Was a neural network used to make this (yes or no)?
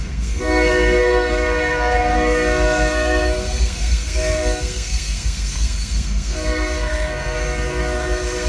yes